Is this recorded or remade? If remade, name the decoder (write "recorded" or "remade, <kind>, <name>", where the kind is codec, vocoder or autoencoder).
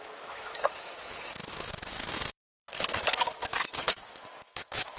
remade, autoencoder, DAC-VAE